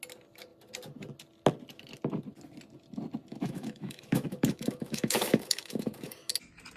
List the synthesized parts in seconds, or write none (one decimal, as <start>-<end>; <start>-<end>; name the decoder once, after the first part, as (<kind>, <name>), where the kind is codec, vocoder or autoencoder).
3.3-6.3 (autoencoder, DAC-VAE)